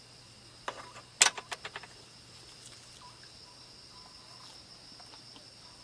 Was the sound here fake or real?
real